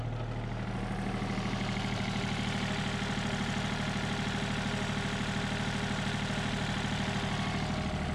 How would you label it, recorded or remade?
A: recorded